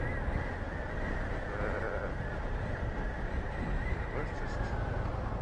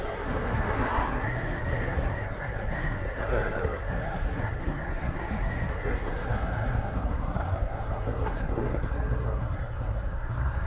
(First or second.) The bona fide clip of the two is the first